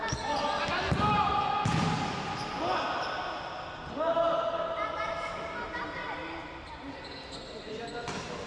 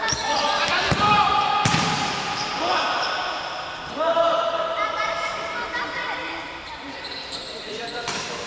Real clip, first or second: first